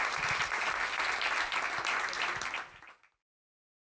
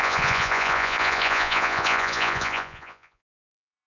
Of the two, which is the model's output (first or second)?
second